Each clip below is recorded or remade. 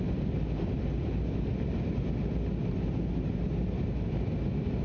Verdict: recorded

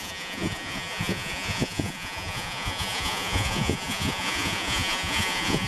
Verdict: remade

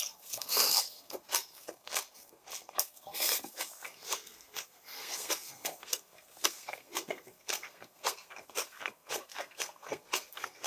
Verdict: remade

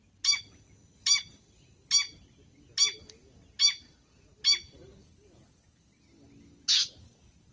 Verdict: recorded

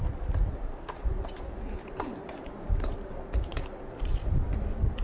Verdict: recorded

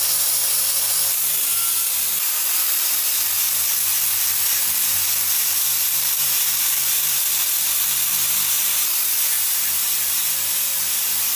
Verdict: remade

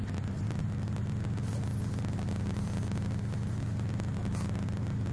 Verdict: recorded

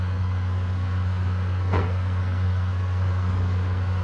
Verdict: remade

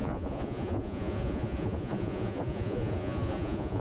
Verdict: remade